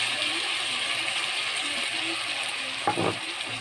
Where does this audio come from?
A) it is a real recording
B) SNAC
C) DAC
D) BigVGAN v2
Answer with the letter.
A